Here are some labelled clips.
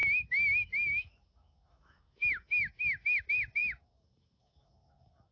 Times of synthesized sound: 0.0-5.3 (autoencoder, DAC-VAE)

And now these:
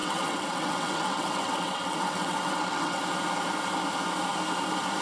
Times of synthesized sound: 0.0-3.0 (vocoder, WaveNeXt)

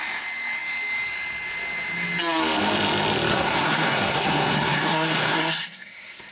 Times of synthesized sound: 3.3-6.3 (codec, SNAC)

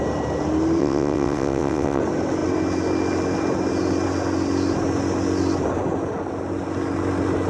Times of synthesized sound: 0.8-2.0 (vocoder, WaveNeXt)

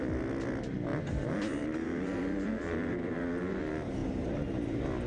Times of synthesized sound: 0.9-3.6 (vocoder, BigVGAN v2)

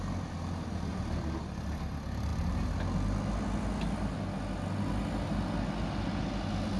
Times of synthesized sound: none

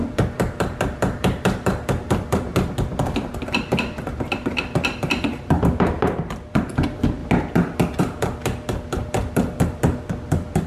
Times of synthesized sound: 0.0-2.5 (vocoder, BigVGAN v2); 3.6-7.2; 8.0-10.7